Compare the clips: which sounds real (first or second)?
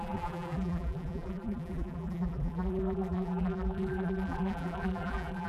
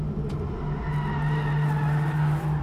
second